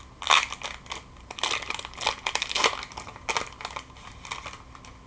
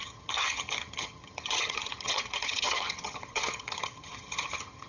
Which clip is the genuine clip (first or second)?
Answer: first